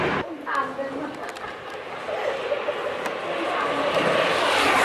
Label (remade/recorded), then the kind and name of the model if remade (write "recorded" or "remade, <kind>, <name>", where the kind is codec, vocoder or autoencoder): recorded